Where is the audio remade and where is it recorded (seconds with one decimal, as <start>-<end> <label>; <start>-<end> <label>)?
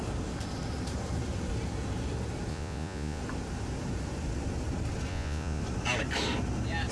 0.0-2.5 recorded; 2.5-3.2 remade; 3.2-5.1 recorded; 5.1-5.6 remade; 5.6-6.9 recorded